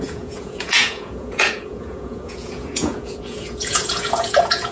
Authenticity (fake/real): fake